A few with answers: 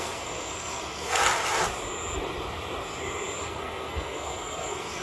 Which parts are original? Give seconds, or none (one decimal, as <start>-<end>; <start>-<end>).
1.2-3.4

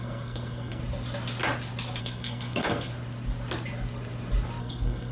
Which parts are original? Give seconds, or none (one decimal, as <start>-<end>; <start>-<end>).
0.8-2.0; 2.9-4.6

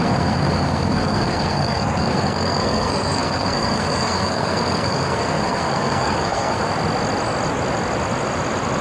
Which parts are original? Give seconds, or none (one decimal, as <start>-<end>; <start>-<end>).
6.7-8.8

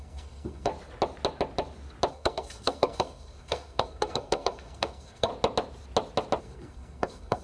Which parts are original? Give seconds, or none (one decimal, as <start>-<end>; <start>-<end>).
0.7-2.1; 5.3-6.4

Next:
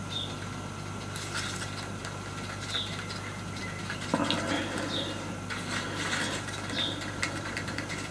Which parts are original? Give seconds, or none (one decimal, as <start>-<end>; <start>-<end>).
0.0-8.1